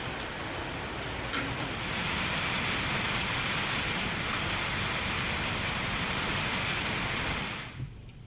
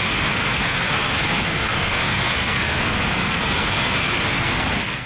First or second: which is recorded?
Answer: first